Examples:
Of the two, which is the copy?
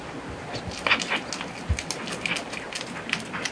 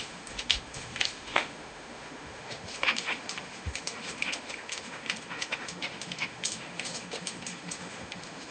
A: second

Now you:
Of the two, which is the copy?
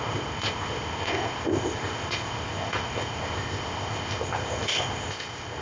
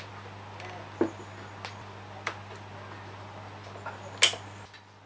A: first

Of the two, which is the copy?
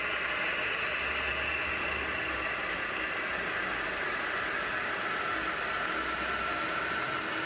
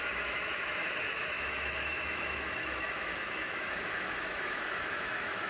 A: second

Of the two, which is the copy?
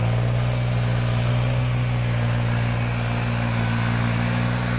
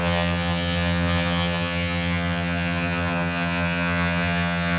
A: second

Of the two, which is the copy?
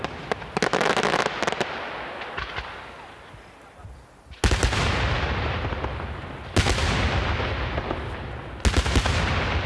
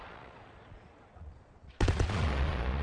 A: second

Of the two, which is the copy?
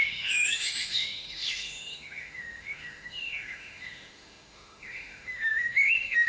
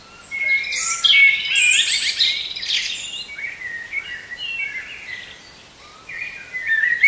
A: first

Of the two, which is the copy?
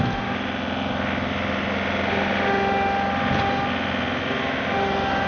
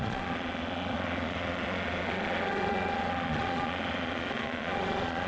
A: second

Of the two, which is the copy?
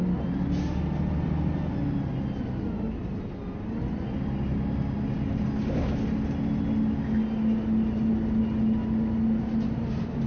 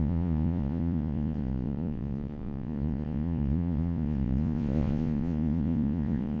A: second